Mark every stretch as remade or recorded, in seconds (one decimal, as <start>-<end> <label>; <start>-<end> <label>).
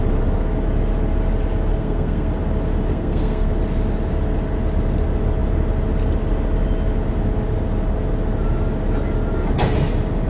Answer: 0.0-1.7 recorded; 1.7-2.3 remade; 2.3-2.9 recorded; 2.9-3.5 remade; 3.5-10.3 recorded